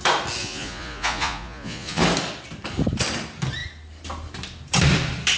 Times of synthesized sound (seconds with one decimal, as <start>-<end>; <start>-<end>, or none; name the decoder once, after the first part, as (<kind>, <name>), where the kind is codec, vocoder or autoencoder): 0.4-2.0 (vocoder, Vocos)